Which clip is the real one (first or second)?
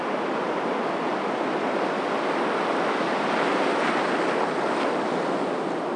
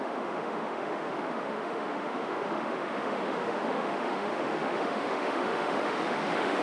first